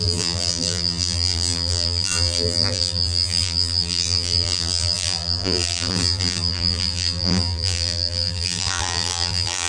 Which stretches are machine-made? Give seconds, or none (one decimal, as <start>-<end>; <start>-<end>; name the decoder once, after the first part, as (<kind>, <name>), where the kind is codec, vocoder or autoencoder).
0.0-9.7 (vocoder, BigVGAN v2)